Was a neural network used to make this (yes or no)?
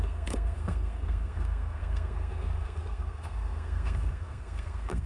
yes